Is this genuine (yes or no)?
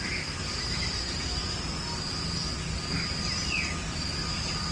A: yes